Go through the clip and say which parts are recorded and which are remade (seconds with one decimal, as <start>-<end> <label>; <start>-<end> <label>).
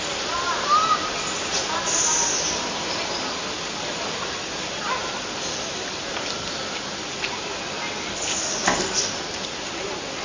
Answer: 0.0-10.2 recorded